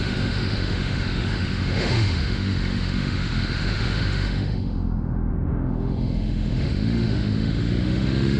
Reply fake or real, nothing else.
fake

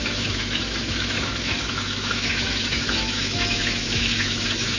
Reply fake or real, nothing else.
fake